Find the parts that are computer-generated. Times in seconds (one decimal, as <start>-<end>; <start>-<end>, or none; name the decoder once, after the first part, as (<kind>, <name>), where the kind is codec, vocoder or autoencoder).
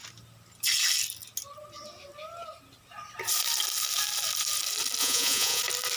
5.0-5.6 (vocoder, Vocos)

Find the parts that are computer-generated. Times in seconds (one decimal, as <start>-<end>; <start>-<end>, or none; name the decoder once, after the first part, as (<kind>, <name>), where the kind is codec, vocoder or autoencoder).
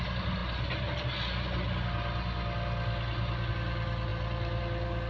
none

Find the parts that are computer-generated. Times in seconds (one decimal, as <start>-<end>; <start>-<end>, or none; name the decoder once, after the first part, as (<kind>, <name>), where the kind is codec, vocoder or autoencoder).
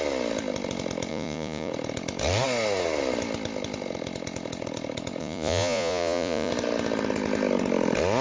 1.1-1.7 (vocoder, Vocos); 5.2-6.5